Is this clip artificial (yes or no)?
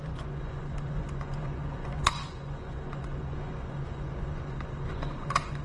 yes